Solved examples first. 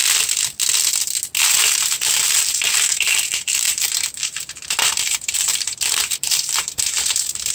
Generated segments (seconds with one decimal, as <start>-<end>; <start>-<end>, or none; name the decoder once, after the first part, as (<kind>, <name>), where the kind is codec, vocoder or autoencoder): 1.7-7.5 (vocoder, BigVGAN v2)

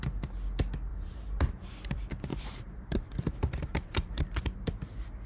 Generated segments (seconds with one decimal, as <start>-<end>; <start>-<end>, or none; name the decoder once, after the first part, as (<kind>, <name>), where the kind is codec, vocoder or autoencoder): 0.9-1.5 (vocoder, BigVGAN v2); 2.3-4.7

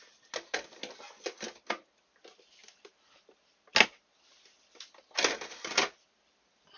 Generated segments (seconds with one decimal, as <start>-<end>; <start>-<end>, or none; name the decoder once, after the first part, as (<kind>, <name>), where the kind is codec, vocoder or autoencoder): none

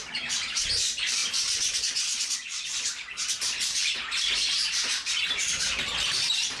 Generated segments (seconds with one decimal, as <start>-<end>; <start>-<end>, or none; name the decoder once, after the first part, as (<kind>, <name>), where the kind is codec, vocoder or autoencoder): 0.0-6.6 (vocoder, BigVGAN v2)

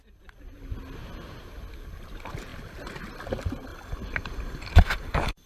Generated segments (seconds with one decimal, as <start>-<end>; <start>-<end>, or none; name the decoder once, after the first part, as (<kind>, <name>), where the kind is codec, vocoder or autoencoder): 3.7-5.5 (vocoder, BigVGAN v2)

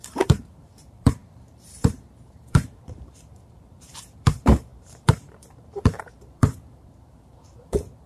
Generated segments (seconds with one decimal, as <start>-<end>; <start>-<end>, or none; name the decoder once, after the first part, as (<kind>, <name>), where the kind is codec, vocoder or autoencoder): 0.0-8.1 (vocoder, BigVGAN v2)

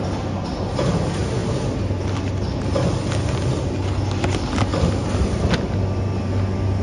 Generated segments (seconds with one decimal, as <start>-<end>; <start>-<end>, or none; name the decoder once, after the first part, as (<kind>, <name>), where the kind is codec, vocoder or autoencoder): none